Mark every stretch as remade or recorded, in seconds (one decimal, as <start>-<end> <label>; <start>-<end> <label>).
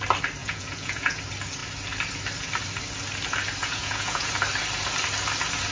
0.0-0.4 recorded; 0.4-1.2 remade; 1.2-3.6 recorded; 3.6-4.3 remade; 4.3-5.7 recorded